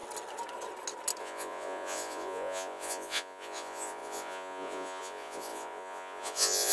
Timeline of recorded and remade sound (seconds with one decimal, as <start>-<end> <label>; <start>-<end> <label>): 0.0-1.2 recorded; 1.2-6.7 remade